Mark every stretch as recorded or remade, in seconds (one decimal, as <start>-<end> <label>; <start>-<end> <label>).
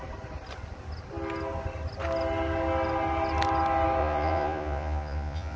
0.0-4.0 recorded; 4.0-5.6 remade